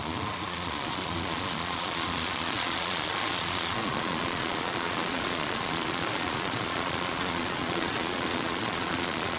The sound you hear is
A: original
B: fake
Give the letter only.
B